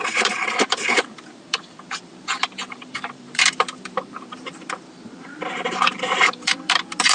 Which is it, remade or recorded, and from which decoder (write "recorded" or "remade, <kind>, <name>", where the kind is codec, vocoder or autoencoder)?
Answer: remade, vocoder, BigVGAN v2